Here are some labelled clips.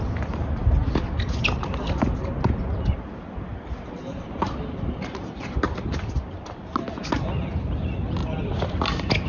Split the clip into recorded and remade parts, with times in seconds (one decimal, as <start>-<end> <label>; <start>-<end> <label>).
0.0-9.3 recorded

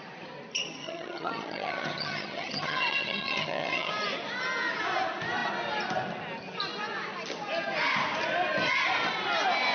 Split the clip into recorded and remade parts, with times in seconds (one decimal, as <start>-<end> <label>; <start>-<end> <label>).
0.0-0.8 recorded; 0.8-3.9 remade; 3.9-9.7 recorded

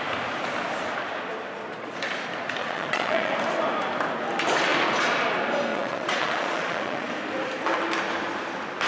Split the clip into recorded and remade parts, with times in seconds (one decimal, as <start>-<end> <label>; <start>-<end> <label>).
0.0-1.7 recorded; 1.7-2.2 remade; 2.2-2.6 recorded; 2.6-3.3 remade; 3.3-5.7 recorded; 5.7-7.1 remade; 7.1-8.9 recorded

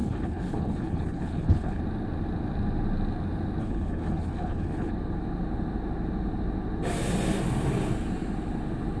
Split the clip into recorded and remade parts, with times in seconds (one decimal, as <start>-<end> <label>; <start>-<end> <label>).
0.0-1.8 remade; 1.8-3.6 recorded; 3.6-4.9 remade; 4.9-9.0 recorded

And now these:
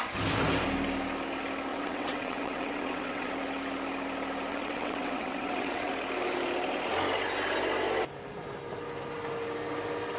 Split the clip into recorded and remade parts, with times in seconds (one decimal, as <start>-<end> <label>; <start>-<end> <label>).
0.0-1.7 recorded; 1.7-3.3 remade; 3.3-4.5 recorded; 4.5-5.9 remade; 5.9-10.2 recorded

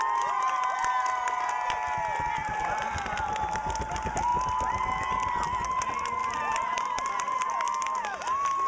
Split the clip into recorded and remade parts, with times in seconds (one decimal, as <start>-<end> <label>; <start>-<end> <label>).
0.0-8.7 recorded

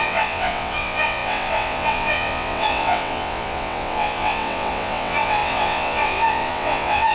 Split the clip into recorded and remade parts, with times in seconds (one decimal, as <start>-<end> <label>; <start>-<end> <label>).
0.0-7.1 remade

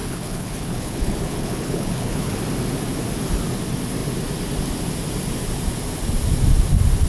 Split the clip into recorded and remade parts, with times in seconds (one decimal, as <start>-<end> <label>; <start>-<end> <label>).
0.0-2.4 remade; 2.4-7.1 recorded